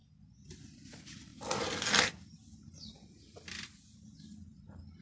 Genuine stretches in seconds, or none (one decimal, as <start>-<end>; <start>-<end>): 0.0-5.0